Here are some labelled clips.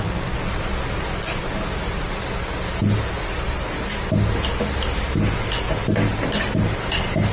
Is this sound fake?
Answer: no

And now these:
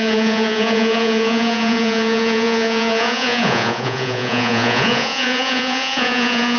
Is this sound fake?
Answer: yes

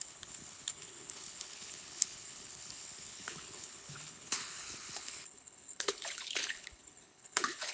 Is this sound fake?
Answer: yes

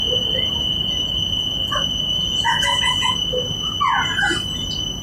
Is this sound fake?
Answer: yes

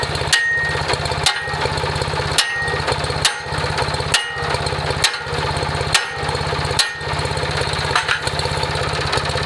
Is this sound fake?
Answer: no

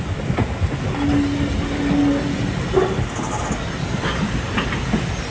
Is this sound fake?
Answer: no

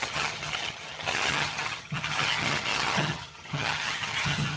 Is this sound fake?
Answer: yes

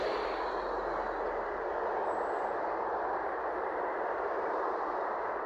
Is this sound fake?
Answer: no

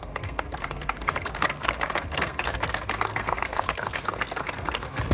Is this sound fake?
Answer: yes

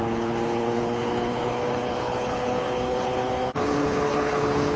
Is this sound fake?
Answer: yes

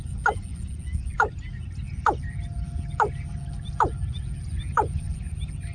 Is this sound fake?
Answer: no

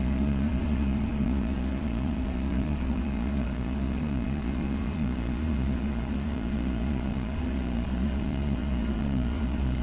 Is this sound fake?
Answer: yes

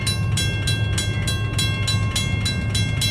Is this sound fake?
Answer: no